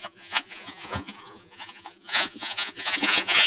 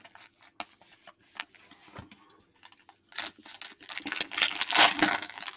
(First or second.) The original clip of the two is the second